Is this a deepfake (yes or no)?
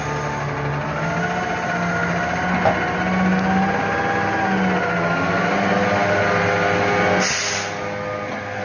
no